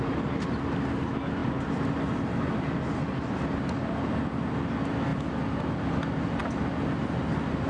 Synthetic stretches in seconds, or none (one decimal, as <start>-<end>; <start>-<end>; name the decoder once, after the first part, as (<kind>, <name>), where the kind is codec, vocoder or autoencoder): none

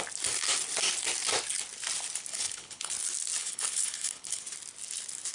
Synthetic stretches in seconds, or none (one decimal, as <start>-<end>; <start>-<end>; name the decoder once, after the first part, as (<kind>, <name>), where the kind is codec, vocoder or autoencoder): 2.3-2.9 (codec, HILCodec); 3.4-4.4

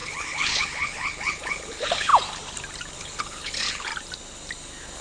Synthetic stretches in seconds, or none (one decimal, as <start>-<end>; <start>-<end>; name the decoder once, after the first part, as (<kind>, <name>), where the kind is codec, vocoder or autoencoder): 0.0-2.1 (codec, HILCodec); 2.9-3.9

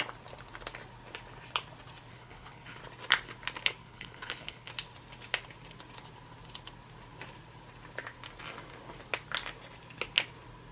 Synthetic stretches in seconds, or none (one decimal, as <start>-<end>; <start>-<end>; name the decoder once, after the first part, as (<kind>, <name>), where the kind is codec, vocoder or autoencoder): 2.1-2.8 (codec, HILCodec); 3.8-4.7

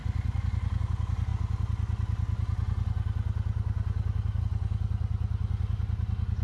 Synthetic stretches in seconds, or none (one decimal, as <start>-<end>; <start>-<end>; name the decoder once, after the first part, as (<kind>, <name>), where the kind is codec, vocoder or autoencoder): none

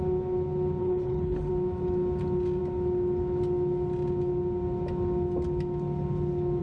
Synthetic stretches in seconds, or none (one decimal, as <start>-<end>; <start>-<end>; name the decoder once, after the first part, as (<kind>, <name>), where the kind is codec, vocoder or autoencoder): 0.8-1.5 (codec, HILCodec)

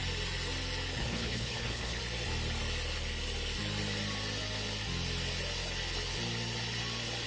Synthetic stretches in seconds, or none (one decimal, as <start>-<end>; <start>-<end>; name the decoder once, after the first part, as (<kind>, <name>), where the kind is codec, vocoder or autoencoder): 1.0-2.0 (codec, HILCodec)